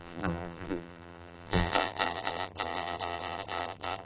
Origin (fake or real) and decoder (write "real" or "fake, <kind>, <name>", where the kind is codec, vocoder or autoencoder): fake, vocoder, BigVGAN v2